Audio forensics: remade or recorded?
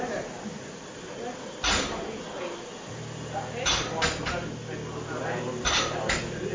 recorded